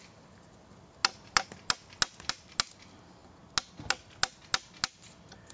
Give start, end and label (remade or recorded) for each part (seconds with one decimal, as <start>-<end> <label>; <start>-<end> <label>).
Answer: 0.0-5.5 recorded